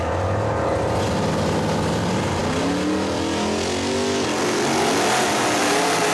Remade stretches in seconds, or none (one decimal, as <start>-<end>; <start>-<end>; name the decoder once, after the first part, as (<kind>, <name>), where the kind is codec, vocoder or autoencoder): none